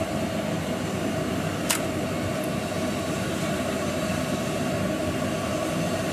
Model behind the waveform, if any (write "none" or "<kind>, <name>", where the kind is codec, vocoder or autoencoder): none